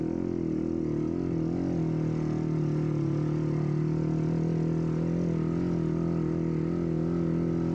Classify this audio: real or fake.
real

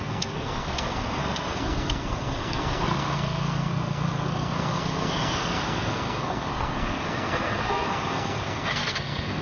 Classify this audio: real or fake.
fake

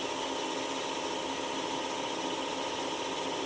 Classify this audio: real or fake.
real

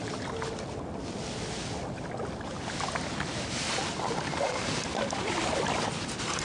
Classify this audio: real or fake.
real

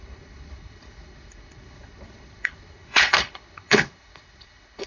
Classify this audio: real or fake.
fake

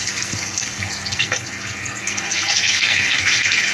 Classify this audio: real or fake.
fake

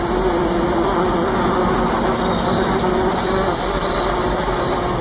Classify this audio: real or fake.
real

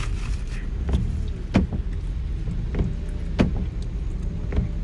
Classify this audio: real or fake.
real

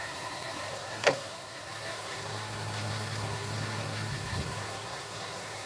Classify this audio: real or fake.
fake